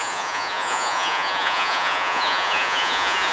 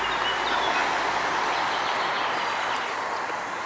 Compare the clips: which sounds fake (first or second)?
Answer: first